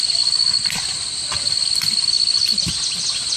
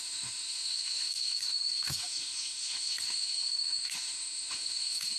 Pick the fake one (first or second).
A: second